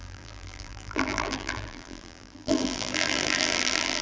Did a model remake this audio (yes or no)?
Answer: yes